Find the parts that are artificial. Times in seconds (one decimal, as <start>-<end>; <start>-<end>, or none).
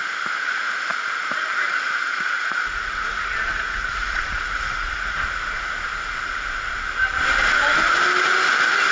2.0-5.2